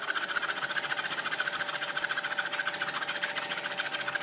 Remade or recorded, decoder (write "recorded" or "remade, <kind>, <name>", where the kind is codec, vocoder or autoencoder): recorded